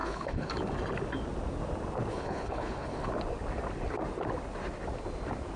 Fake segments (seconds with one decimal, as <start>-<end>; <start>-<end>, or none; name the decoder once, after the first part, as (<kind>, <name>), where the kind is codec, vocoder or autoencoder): 0.0-0.5 (codec, HILCodec); 2.1-3.1

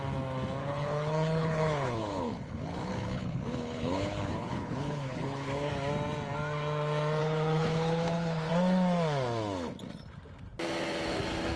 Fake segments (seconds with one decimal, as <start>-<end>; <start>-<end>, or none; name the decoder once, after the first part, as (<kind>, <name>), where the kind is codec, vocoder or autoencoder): 0.6-5.7 (codec, HILCodec); 7.2-8.5

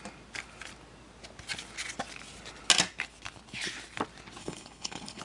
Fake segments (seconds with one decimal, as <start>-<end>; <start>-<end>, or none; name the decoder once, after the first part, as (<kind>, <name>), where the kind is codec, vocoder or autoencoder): 4.4-5.2 (codec, HILCodec)

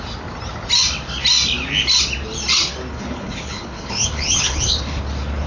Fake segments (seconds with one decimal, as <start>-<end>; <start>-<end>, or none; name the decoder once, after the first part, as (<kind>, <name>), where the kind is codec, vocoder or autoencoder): 2.9-5.0 (codec, HILCodec)

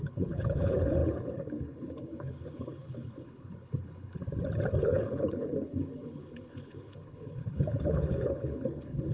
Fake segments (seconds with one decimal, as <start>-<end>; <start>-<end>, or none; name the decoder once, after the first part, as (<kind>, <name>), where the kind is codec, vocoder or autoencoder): 0.0-4.2 (codec, HILCodec); 4.8-9.1

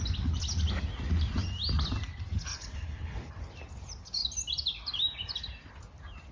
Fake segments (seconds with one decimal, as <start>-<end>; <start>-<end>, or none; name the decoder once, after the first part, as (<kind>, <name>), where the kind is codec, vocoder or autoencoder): 2.5-3.3 (codec, HILCodec)